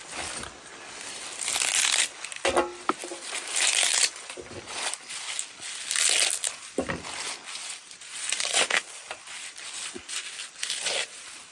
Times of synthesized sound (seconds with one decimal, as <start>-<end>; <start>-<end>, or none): 3.0-4.8; 7.8-9.2